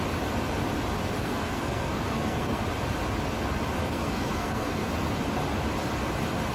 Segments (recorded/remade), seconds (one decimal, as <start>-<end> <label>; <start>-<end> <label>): 0.0-1.2 recorded; 1.2-2.6 remade; 2.6-3.8 recorded; 3.8-4.9 remade; 4.9-6.5 recorded